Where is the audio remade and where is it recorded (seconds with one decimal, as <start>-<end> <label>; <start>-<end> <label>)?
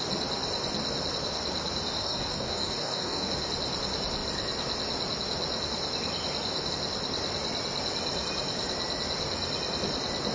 0.0-2.0 recorded; 2.0-3.3 remade; 3.3-10.3 recorded